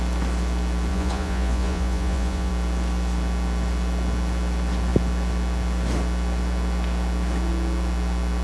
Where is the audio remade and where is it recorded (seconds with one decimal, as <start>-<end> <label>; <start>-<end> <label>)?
0.0-0.9 recorded; 0.9-2.5 remade; 2.5-8.4 recorded